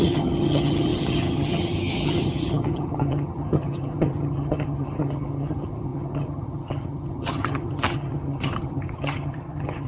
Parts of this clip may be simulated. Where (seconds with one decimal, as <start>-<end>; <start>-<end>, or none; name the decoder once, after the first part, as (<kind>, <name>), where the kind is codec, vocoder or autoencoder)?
0.0-9.9 (vocoder, HiFi-GAN)